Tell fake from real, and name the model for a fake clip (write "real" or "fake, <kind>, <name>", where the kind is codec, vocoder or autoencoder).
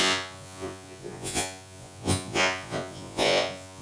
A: fake, vocoder, Vocos